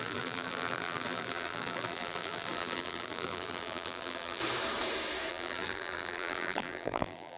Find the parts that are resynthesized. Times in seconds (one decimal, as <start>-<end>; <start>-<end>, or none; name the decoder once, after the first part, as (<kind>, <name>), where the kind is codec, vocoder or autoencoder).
0.0-4.4 (vocoder, BigVGAN v2); 5.3-7.4